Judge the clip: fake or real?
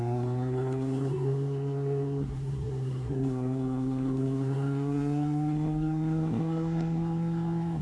fake